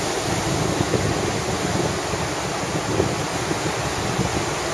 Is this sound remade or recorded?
recorded